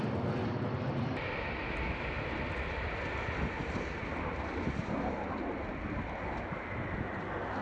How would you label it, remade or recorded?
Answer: recorded